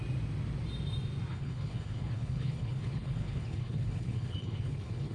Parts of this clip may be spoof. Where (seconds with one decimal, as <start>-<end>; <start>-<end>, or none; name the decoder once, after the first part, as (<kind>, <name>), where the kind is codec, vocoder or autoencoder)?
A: 1.3-5.1 (codec, HILCodec)